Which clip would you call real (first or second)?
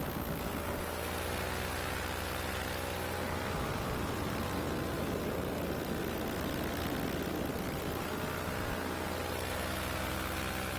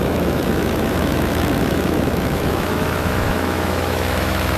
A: first